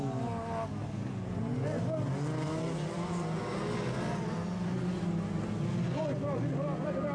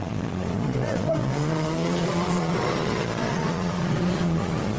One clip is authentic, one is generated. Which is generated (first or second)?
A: second